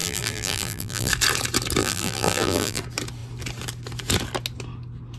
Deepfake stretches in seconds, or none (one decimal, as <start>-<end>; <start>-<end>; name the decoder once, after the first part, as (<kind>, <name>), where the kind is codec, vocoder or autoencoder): 0.0-1.1 (vocoder, BigVGAN v2); 1.8-2.8